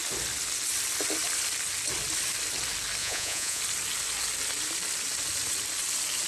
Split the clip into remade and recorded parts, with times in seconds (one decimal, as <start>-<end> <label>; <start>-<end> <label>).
0.0-3.0 recorded; 3.0-3.6 remade; 3.6-6.3 recorded